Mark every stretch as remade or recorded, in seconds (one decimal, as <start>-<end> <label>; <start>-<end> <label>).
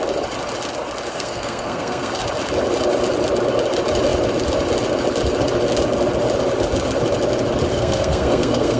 0.0-1.1 recorded; 1.1-2.1 remade; 2.1-7.7 recorded; 7.7-8.8 remade